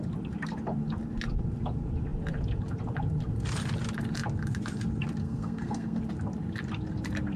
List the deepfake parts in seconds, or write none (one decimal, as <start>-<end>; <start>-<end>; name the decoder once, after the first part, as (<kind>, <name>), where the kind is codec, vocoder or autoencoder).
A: 5.2-6.0 (codec, SNAC)